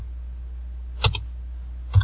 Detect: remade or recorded recorded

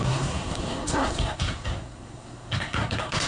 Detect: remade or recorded remade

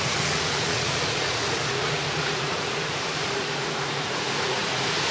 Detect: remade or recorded remade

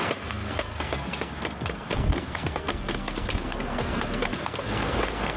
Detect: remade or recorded remade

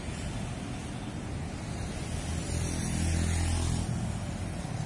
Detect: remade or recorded recorded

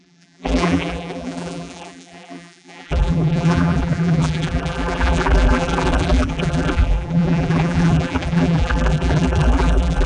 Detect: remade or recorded remade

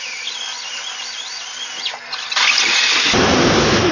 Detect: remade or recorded recorded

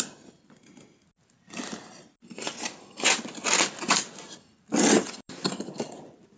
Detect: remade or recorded recorded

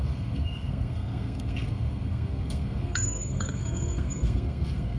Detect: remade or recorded remade